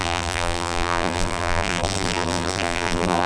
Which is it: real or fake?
fake